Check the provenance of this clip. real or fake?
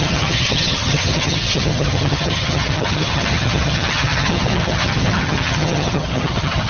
fake